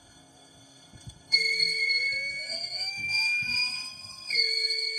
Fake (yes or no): yes